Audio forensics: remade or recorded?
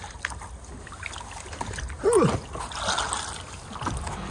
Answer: recorded